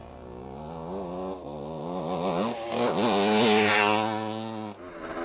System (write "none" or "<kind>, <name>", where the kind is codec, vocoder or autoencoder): none